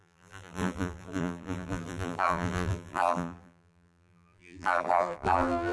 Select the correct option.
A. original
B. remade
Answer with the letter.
B